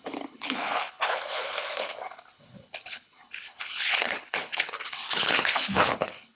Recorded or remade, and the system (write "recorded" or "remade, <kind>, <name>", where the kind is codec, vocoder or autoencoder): remade, codec, HILCodec